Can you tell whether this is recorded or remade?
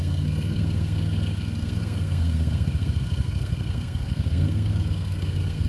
remade